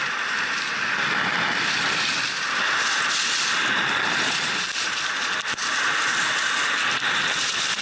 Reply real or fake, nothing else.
real